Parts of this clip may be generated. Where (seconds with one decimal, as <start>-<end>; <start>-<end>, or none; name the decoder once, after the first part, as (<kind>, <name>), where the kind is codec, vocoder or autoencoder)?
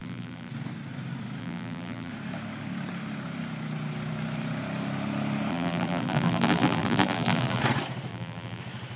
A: 0.0-0.5 (vocoder, BigVGAN v2); 1.4-2.1; 5.5-7.6; 8.1-8.6